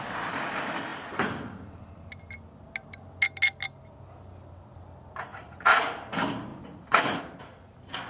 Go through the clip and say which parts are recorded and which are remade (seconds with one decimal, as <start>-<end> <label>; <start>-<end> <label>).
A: 0.0-5.3 recorded; 5.3-5.9 remade; 5.9-6.5 recorded; 6.5-7.2 remade; 7.2-8.1 recorded